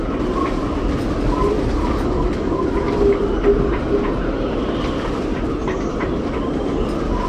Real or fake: real